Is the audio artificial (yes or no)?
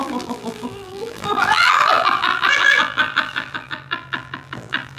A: yes